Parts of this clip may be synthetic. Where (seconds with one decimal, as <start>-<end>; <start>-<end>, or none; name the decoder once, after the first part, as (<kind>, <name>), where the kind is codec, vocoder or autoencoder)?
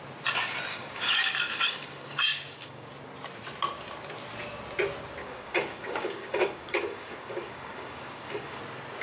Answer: 0.7-2.9 (codec, DAC); 5.2-8.6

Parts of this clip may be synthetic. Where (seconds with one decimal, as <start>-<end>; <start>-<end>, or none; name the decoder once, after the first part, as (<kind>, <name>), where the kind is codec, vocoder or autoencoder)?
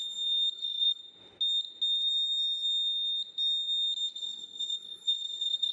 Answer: 0.5-1.0 (codec, SNAC); 4.2-5.7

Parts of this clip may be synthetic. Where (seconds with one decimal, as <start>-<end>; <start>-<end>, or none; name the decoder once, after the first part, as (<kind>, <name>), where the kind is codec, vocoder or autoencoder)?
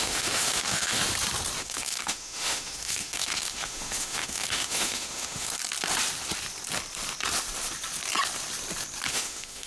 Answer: 0.0-1.0 (autoencoder, DAC-VAE); 1.6-5.5; 9.1-9.7